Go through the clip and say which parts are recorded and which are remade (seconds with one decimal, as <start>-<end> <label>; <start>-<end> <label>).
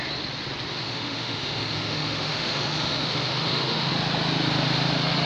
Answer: 0.0-0.7 recorded; 0.7-3.9 remade; 3.9-5.3 recorded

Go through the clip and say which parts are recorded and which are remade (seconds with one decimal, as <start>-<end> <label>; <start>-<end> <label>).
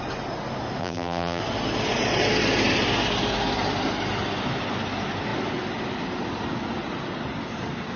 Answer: 0.0-0.8 recorded; 0.8-1.4 remade; 1.4-8.0 recorded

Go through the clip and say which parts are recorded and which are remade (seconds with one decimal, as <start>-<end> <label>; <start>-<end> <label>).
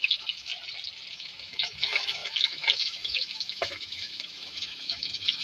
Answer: 0.0-0.5 remade; 0.5-1.1 recorded; 1.1-5.4 remade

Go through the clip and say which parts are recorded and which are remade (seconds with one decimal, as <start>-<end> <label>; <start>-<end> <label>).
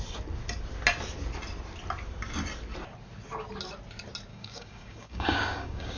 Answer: 0.0-4.3 recorded; 4.3-6.0 remade